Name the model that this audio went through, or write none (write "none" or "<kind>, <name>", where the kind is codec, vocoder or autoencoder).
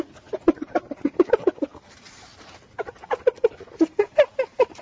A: none